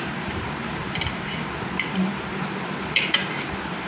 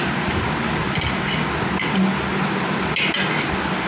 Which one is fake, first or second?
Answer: first